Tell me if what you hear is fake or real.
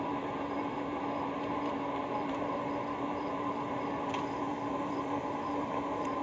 fake